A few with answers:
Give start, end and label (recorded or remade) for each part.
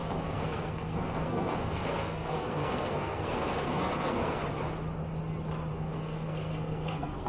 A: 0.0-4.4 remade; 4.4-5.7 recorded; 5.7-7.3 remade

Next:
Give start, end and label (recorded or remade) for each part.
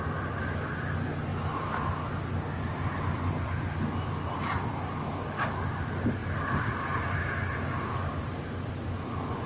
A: 0.0-9.5 recorded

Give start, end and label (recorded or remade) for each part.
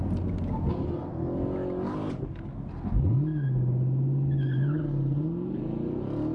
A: 0.0-6.3 recorded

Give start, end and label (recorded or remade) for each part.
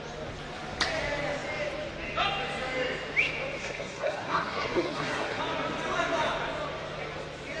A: 0.0-3.6 recorded; 3.6-5.4 remade; 5.4-7.6 recorded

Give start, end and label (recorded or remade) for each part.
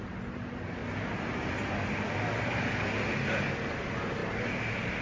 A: 0.0-5.0 recorded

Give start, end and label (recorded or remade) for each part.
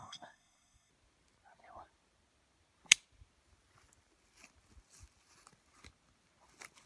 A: 0.0-0.9 remade; 0.9-6.9 recorded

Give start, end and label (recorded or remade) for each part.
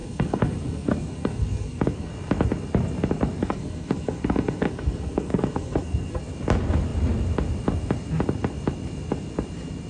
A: 0.0-2.1 remade; 2.1-3.4 recorded; 3.4-6.2 remade; 6.2-9.9 recorded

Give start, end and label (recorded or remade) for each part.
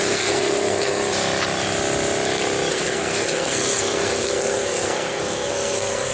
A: 0.0-1.0 remade; 1.0-2.7 recorded; 2.7-6.1 remade